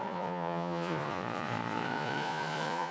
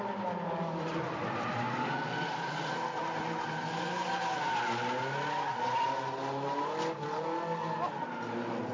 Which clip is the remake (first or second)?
first